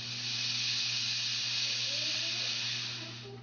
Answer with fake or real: real